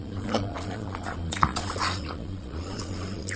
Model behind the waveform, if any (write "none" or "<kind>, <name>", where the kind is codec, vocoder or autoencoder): vocoder, Vocos